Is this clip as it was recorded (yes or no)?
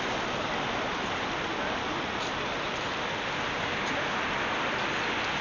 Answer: yes